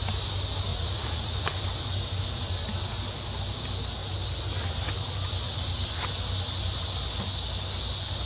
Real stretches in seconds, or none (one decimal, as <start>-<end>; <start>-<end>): 0.0-0.7; 1.5-8.3